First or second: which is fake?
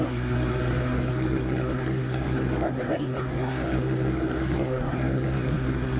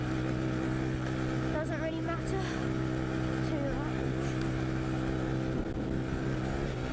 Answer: first